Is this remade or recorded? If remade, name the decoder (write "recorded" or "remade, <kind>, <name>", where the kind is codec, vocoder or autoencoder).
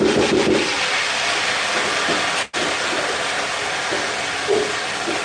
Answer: recorded